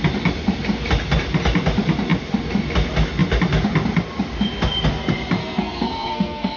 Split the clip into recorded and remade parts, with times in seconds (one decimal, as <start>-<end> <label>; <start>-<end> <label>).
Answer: 0.0-5.4 recorded; 5.4-6.6 remade